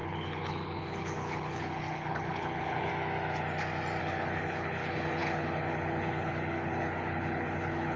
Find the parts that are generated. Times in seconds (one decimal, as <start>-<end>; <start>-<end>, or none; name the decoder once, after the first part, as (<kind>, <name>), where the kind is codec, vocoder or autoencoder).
0.0-2.9 (codec, HILCodec); 4.0-8.0